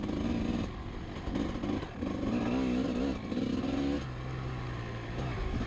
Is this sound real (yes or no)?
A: yes